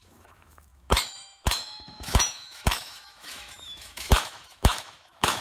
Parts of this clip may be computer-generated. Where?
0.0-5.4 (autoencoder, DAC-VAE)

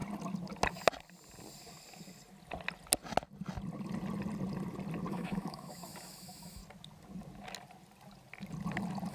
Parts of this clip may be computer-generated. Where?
5.1-6.6 (autoencoder, DAC-VAE)

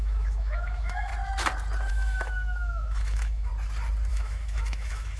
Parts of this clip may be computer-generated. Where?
0.0-1.1 (autoencoder, DAC-VAE); 1.9-3.5; 4.1-5.2

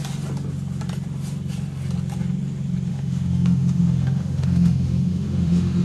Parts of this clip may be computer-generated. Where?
2.9-5.8 (autoencoder, DAC-VAE)

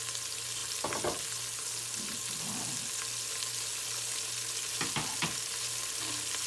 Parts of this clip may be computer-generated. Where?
none

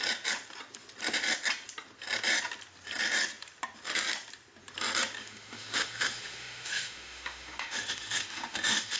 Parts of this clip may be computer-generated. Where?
5.2-9.0 (autoencoder, DAC-VAE)